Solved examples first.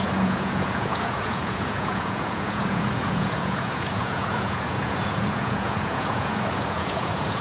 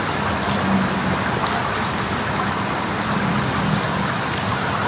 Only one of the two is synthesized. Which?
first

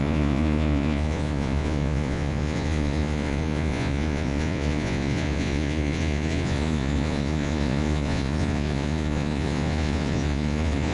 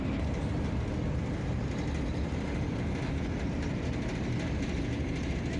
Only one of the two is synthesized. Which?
first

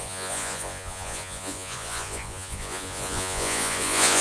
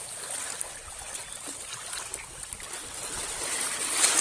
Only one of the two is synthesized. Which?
first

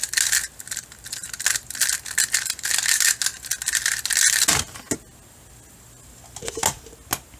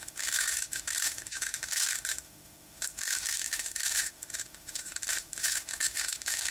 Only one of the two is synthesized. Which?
second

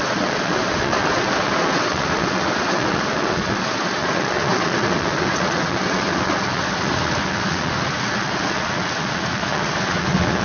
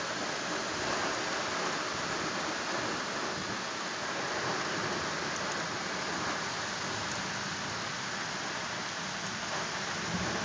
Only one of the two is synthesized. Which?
first